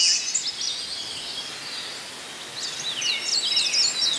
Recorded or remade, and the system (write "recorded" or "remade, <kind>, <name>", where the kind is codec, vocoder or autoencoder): recorded